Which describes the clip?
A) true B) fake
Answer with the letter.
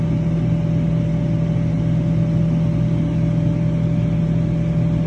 A